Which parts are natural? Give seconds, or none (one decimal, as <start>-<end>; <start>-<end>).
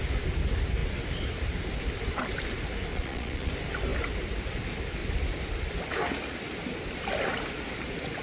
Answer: 0.0-2.9; 3.5-8.2